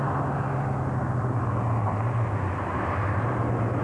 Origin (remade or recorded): recorded